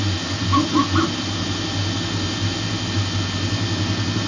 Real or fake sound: real